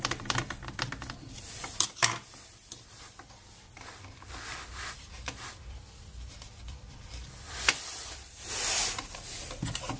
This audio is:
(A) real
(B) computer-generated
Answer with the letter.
B